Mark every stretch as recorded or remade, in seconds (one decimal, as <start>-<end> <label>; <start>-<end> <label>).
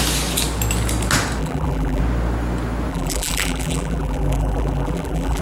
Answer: 0.0-1.4 recorded; 1.4-2.0 remade; 2.0-2.9 recorded; 2.9-5.4 remade